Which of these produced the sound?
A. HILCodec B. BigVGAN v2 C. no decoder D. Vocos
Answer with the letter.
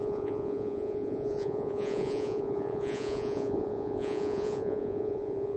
D